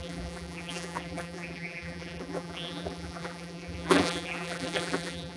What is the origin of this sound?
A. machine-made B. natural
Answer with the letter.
A